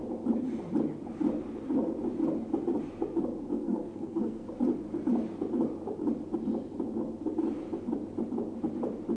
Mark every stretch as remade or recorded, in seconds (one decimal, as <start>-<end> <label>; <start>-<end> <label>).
0.0-3.5 recorded; 3.5-4.5 remade; 4.5-9.2 recorded